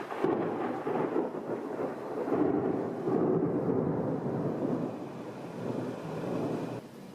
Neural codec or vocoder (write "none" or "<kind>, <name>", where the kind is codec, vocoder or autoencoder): none